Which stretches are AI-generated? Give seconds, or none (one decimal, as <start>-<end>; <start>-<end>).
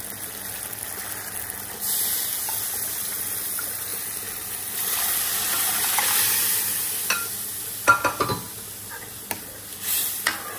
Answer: none